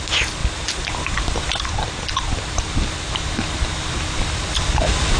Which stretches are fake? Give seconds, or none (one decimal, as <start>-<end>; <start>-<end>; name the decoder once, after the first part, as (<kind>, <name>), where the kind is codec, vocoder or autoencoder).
none